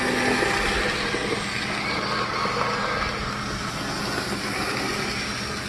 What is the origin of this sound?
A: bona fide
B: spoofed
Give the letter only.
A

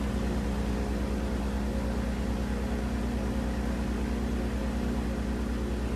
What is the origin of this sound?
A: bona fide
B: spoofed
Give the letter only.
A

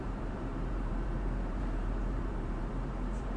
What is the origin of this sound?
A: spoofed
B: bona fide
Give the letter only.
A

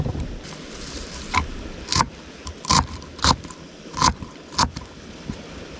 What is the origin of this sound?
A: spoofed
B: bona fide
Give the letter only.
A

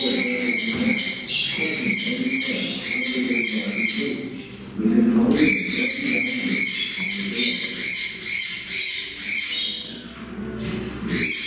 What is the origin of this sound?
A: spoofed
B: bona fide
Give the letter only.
B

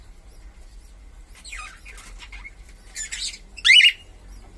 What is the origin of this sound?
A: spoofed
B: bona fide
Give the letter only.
B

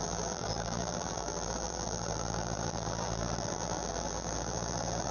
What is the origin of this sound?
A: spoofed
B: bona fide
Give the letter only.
A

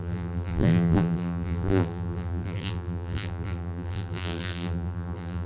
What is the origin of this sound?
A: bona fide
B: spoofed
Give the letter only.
B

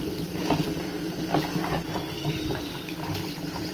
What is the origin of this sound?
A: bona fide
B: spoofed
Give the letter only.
B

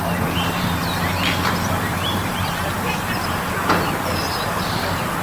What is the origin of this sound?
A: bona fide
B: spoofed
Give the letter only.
B